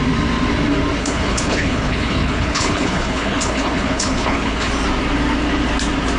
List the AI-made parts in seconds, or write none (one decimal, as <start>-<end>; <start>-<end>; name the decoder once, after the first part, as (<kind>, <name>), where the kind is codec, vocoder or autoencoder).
1.0-4.7 (codec, HILCodec)